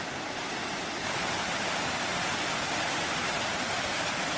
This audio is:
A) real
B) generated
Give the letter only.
A